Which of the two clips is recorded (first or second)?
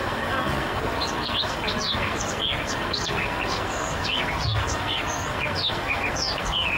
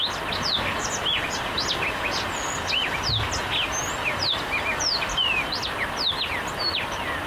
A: second